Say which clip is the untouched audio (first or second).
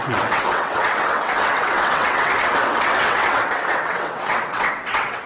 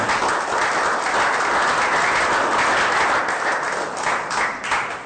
second